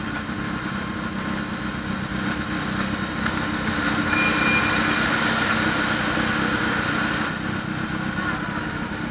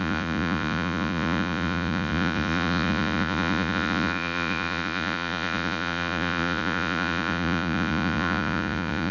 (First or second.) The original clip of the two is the first